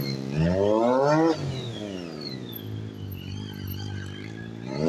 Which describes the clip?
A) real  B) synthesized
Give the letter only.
A